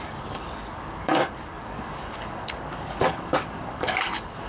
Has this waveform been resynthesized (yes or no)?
yes